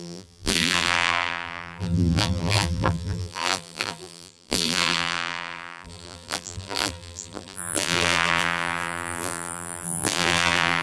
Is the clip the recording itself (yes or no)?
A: no